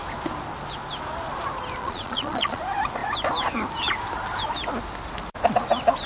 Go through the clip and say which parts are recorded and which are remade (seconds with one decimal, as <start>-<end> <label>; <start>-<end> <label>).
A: 0.0-1.8 recorded; 1.8-2.6 remade; 2.6-6.1 recorded

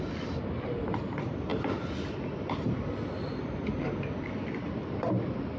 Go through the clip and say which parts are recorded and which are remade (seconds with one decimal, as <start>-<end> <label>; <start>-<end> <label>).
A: 0.0-5.6 remade

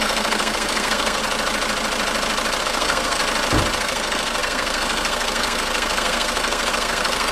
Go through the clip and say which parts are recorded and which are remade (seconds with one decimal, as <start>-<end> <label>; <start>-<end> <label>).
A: 0.0-1.2 remade; 1.2-2.6 recorded; 2.6-3.2 remade; 3.2-3.8 recorded; 3.8-7.3 remade

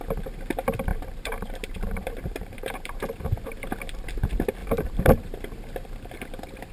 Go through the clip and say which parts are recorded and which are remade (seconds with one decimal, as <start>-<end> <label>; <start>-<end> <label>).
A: 0.0-0.9 recorded; 0.9-3.0 remade; 3.0-4.6 recorded; 4.6-6.0 remade; 6.0-6.7 recorded

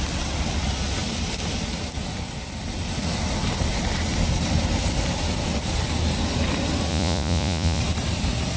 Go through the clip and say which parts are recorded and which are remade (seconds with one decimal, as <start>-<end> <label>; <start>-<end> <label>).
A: 0.0-6.9 recorded; 6.9-7.8 remade; 7.8-8.6 recorded

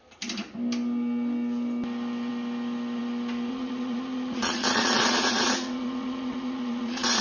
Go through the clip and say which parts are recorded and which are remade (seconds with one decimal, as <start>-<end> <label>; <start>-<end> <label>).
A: 0.0-3.5 recorded; 3.5-7.2 remade

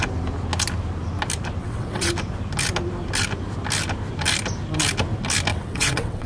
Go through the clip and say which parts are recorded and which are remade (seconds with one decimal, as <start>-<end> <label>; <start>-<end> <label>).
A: 0.0-1.6 recorded; 1.6-2.1 remade; 2.1-5.5 recorded; 5.5-6.3 remade

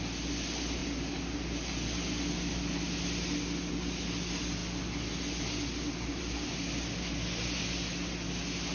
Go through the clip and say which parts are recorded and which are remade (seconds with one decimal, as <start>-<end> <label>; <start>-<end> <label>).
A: 0.0-8.7 recorded